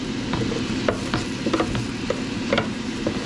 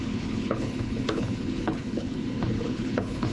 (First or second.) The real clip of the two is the first